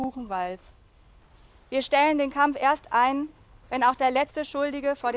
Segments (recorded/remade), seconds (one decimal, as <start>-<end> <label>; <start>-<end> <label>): 0.0-1.2 remade; 1.2-3.3 recorded; 3.3-4.3 remade; 4.3-5.2 recorded